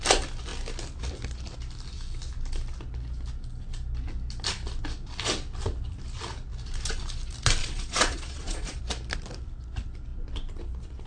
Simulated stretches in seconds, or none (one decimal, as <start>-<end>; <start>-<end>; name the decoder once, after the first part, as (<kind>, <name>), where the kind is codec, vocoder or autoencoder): 7.6-8.8 (vocoder, Vocos)